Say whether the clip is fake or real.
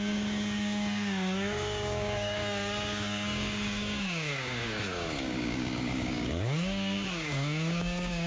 fake